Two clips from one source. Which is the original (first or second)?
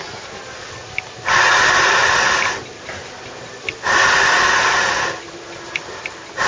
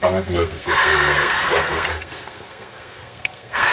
first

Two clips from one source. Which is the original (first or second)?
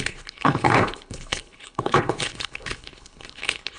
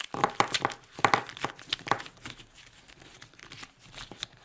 second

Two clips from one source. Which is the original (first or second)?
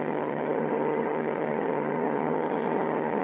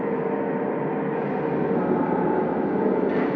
second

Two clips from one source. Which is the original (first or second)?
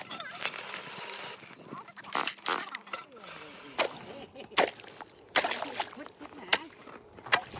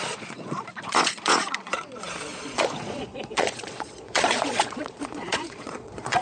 first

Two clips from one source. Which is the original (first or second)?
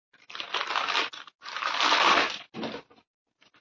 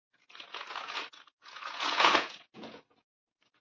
first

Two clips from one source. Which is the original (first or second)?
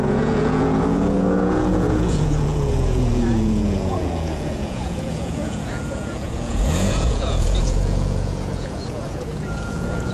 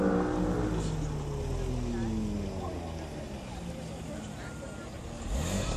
second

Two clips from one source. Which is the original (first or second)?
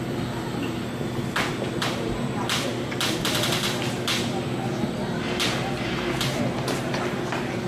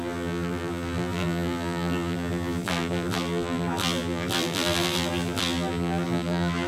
first